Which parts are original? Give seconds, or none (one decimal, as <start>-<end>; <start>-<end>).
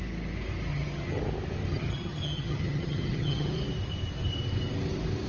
0.0-0.7; 1.2-1.7; 3.5-5.3